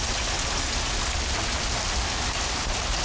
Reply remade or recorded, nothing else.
recorded